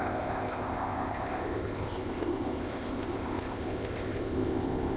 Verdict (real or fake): fake